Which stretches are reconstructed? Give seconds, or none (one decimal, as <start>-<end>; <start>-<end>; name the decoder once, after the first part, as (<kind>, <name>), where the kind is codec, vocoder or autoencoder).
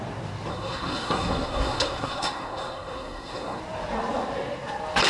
0.5-3.6 (codec, SNAC)